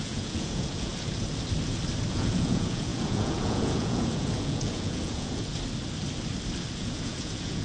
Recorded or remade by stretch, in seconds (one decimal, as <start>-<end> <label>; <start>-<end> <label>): 0.0-0.9 remade; 0.9-2.1 recorded; 2.1-5.5 remade; 5.5-6.7 recorded; 6.7-7.6 remade